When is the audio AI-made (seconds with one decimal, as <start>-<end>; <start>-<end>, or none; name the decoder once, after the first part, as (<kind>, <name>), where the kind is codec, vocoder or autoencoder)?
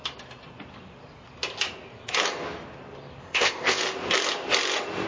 3.2-3.8 (codec, ZipCodec)